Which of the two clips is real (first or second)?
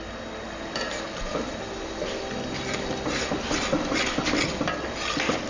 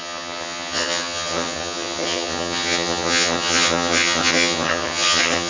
first